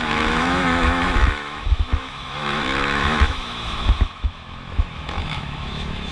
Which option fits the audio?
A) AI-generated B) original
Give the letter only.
A